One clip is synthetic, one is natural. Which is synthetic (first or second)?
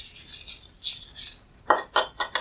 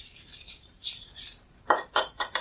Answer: second